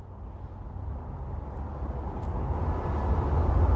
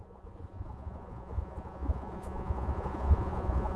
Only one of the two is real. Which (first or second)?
first